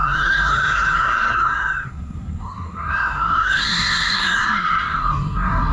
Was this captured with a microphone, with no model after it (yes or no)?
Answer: no